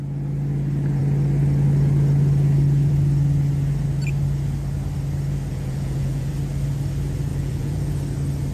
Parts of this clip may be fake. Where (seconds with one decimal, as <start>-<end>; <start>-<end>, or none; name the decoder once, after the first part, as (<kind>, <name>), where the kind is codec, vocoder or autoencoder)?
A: 5.5-6.3 (vocoder, Vocos); 7.3-7.9